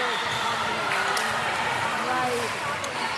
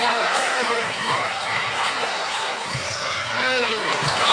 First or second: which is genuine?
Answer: first